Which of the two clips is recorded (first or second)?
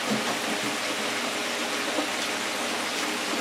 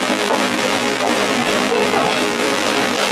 first